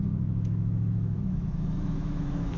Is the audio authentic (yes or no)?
no